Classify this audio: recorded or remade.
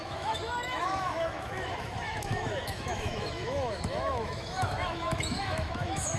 remade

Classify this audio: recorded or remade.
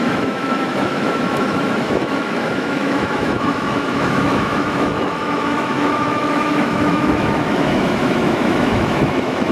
remade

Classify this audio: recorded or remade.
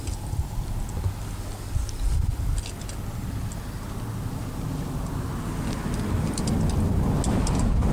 recorded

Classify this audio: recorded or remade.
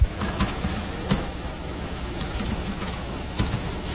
remade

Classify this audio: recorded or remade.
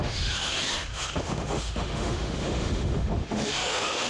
remade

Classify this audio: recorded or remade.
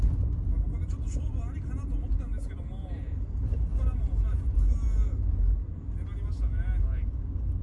recorded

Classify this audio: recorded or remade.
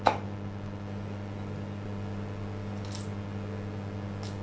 recorded